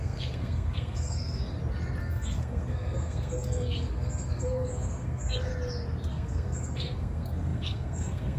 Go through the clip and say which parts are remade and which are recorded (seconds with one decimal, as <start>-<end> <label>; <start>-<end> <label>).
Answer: 0.0-1.4 remade; 1.4-2.0 recorded; 2.0-5.5 remade; 5.5-6.1 recorded; 6.1-8.4 remade